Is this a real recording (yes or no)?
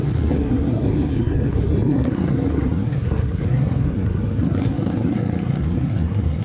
no